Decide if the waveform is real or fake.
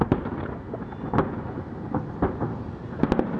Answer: real